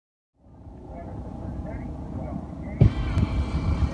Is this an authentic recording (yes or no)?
yes